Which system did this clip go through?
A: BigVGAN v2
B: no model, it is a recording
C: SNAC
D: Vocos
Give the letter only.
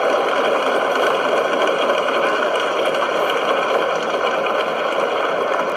B